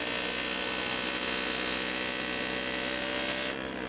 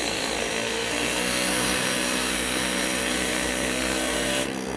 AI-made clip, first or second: second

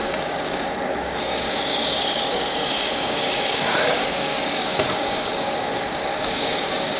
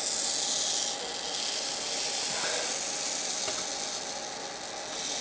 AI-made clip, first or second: first